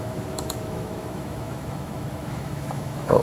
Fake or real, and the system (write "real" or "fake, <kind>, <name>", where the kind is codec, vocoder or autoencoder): fake, autoencoder, DAC-VAE